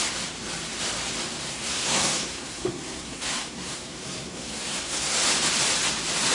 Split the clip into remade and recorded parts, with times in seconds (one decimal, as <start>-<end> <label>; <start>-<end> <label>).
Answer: 0.0-1.4 recorded; 1.4-5.2 remade; 5.2-6.3 recorded